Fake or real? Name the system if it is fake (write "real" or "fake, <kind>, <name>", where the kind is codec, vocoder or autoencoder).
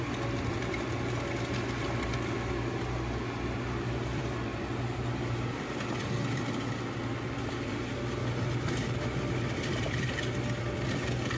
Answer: real